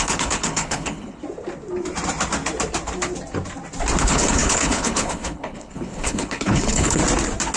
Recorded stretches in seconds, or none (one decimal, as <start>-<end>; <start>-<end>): 1.2-4.0; 7.0-7.6